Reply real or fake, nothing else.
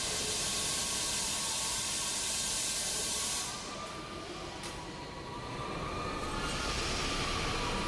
real